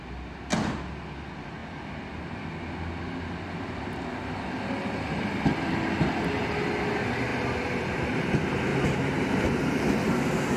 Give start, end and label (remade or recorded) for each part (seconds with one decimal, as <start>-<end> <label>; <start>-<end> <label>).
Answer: 0.0-8.7 recorded; 8.7-10.0 remade; 10.0-10.6 recorded